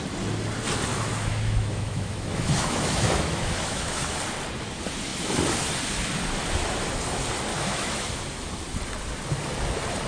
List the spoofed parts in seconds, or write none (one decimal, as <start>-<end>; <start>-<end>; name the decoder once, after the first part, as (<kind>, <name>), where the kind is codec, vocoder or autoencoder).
0.9-4.2 (autoencoder, DAC-VAE); 7.5-8.1